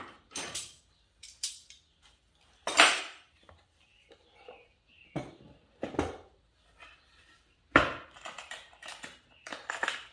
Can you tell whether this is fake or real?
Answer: fake